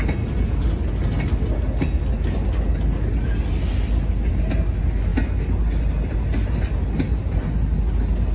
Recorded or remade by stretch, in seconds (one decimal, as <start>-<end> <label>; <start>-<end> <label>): 0.0-8.3 recorded